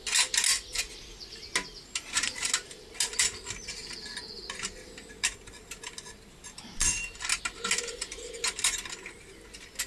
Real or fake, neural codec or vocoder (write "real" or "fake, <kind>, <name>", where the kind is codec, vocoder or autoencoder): real